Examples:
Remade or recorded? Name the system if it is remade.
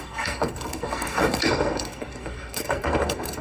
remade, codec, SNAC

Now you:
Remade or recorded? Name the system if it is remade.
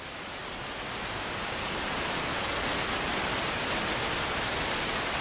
recorded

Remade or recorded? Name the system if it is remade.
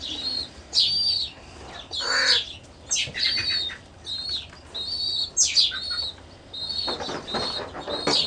recorded